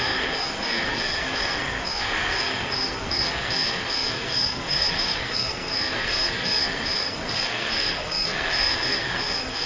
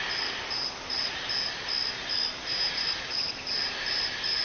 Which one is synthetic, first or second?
first